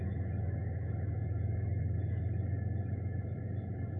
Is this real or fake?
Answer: fake